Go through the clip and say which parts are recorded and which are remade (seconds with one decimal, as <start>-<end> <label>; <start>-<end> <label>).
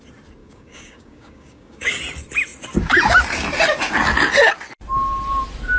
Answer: 0.0-0.4 recorded; 0.4-2.0 remade; 2.0-5.8 recorded